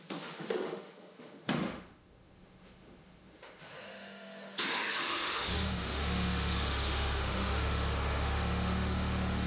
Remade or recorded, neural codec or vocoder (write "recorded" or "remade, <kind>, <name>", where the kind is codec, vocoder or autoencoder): remade, autoencoder, DAC-VAE